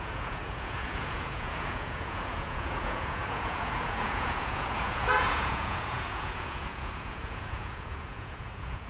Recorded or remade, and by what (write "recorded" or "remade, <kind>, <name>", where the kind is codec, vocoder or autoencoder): remade, vocoder, Vocos